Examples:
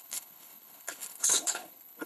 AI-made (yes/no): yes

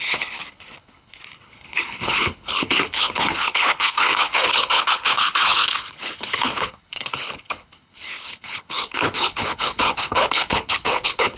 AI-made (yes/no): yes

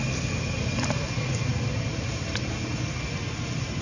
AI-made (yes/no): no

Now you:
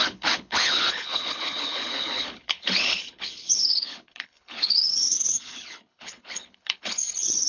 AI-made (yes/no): yes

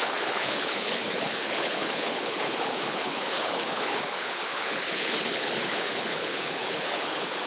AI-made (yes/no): yes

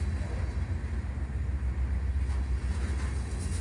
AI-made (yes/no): no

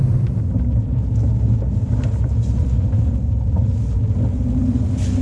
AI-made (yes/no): no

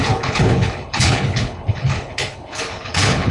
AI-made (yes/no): yes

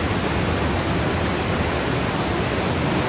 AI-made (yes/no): no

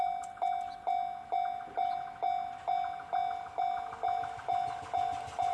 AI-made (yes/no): no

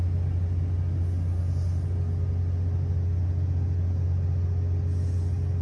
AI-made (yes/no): no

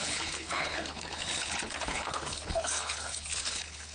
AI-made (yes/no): yes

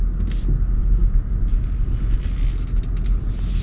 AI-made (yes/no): no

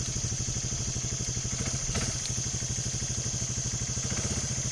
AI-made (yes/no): no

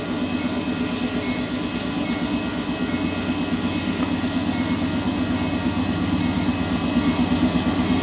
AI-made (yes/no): no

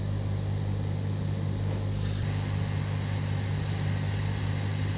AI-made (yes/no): no